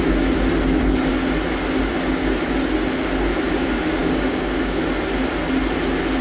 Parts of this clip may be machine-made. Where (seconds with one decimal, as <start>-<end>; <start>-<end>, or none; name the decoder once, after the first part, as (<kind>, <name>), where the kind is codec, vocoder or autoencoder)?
4.0-4.8 (codec, DAC)